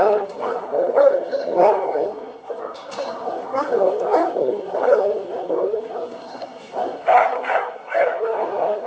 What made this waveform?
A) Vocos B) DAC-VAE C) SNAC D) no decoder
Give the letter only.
C